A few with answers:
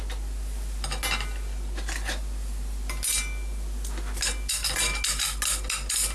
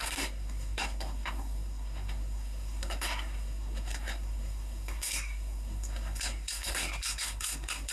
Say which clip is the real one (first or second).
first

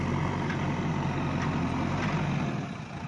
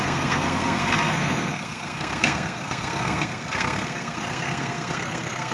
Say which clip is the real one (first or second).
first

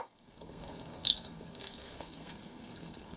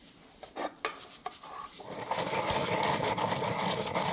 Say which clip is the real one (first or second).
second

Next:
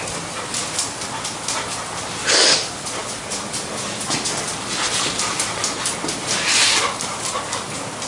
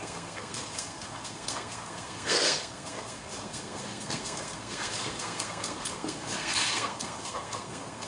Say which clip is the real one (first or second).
first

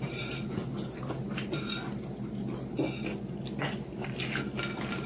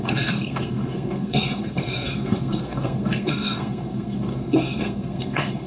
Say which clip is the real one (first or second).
first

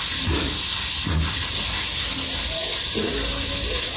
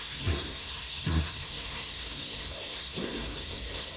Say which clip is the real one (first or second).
first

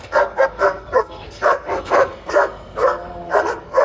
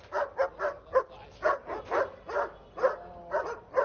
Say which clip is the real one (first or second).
second